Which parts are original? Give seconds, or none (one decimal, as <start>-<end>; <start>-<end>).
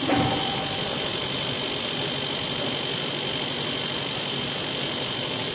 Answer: 0.0-5.5